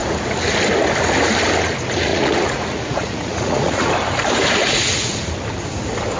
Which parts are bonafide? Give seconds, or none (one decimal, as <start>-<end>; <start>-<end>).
0.0-2.1; 3.9-4.6; 5.3-6.2